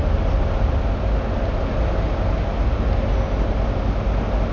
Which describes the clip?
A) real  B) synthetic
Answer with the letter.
A